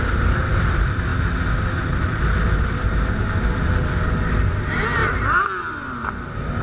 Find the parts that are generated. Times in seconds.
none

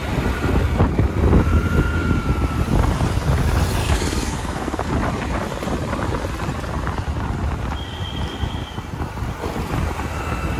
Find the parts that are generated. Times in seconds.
3.8-4.9 (codec, SNAC)